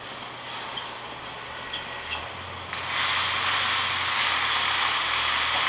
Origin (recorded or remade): recorded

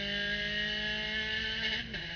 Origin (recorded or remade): recorded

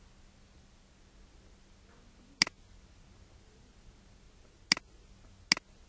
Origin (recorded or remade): recorded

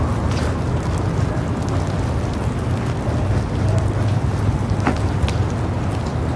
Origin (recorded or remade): recorded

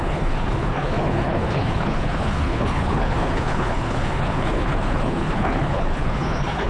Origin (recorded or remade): remade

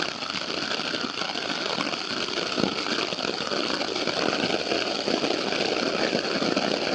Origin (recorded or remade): recorded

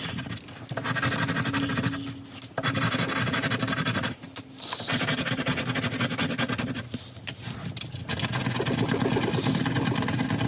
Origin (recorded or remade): recorded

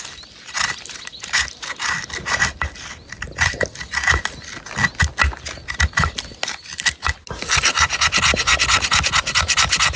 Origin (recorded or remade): recorded